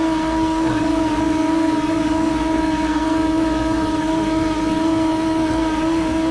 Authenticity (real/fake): fake